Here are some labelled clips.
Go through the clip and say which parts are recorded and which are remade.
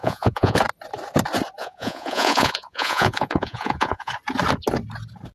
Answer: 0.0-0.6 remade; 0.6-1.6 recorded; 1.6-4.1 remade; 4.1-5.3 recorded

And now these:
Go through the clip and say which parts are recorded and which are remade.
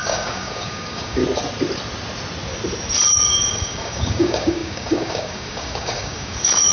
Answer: 0.0-1.2 remade; 1.2-3.1 recorded; 3.1-6.7 remade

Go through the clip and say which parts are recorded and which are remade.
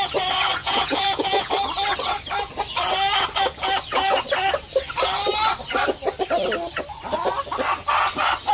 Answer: 0.0-0.6 recorded; 0.6-1.5 remade; 1.5-8.5 recorded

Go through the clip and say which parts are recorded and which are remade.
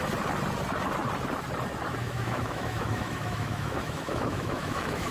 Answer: 0.0-2.0 recorded; 2.0-5.1 remade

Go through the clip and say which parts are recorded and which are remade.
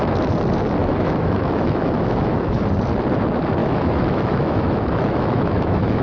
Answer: 0.0-0.8 recorded; 0.8-2.6 remade; 2.6-3.6 recorded; 3.6-6.0 remade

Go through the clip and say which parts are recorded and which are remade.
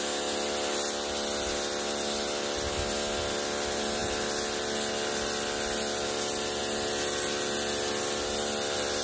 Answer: 0.0-9.0 recorded